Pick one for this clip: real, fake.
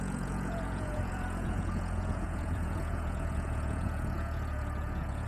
fake